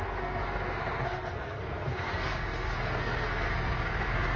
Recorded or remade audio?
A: remade